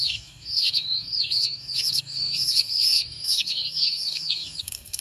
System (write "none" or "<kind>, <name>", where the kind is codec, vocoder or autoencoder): codec, DAC